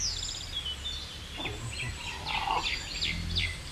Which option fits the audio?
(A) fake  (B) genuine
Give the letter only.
B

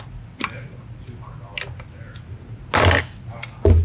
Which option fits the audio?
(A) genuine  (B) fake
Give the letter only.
A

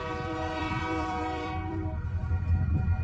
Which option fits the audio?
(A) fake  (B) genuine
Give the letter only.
A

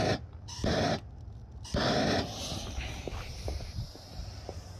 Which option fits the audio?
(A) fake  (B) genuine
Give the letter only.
B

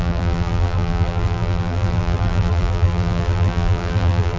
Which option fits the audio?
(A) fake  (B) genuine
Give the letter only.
A